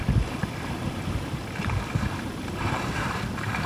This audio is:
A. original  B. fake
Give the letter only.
A